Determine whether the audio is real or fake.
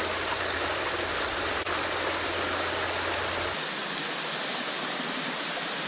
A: real